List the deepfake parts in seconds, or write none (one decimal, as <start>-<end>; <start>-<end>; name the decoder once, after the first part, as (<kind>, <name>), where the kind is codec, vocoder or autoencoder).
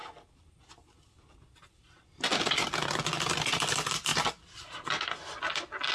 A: none